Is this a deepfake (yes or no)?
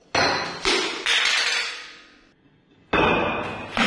no